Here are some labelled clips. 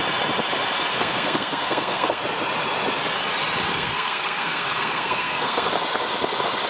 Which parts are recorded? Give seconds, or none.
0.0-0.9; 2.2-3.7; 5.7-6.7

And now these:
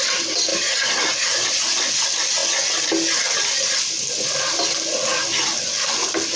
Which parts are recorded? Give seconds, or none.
0.0-0.5; 1.5-6.4

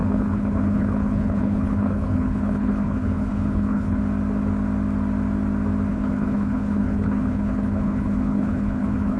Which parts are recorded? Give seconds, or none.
4.0-5.9

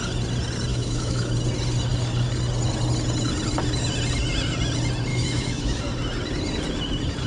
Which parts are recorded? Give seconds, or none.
0.0-0.7; 1.3-5.1; 5.8-7.3

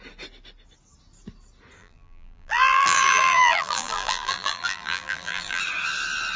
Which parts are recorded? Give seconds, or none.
0.0-1.8; 5.6-6.4

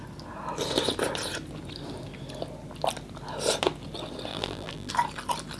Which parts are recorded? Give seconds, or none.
0.0-4.3; 4.9-5.6

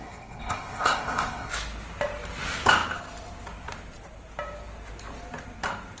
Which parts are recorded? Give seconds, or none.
1.5-6.0